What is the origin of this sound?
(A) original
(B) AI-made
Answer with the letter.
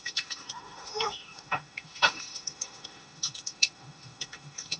B